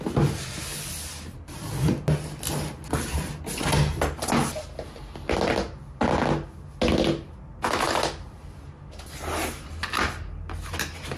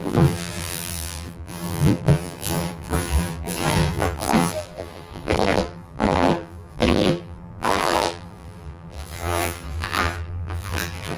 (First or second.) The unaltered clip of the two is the first